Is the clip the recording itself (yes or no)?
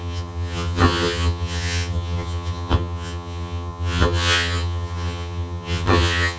no